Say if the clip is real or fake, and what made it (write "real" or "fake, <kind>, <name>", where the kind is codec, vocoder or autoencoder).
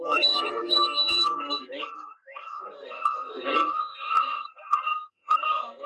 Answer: fake, codec, SNAC